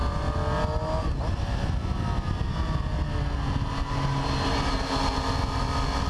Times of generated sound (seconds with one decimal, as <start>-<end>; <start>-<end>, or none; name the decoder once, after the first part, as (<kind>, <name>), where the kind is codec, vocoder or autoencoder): none